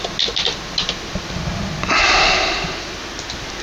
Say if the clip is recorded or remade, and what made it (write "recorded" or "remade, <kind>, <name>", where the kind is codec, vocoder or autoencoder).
recorded